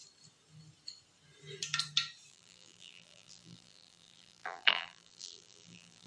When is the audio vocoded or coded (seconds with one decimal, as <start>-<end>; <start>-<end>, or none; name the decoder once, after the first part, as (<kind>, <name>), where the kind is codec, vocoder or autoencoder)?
2.3-6.1 (vocoder, BigVGAN v2)